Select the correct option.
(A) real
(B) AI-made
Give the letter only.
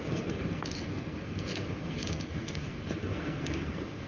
B